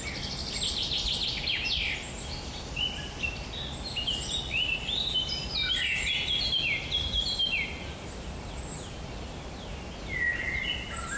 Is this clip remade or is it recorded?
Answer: recorded